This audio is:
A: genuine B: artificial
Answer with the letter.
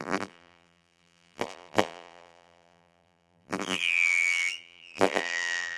B